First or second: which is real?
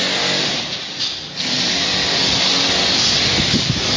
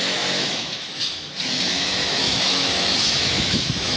first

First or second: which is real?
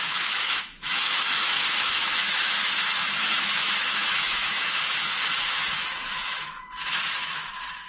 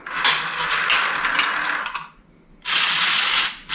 second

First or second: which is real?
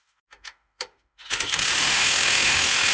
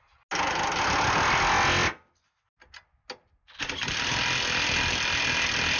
second